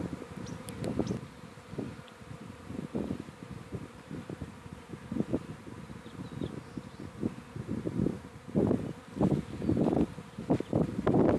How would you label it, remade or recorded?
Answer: recorded